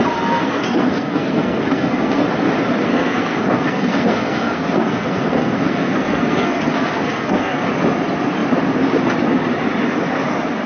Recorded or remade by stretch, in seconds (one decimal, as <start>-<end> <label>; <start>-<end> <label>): 0.0-0.4 recorded; 0.4-2.2 remade; 2.2-2.8 recorded; 2.8-7.7 remade; 7.7-10.7 recorded

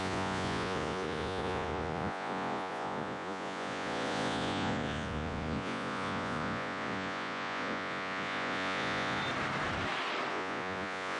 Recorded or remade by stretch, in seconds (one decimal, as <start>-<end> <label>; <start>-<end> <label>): 0.0-9.2 remade; 9.2-10.3 recorded; 10.3-11.2 remade